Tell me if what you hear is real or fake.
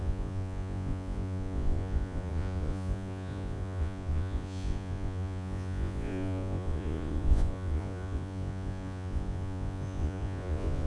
fake